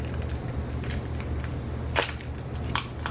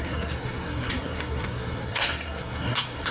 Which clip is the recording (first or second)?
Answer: first